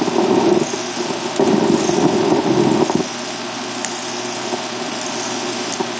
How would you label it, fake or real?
real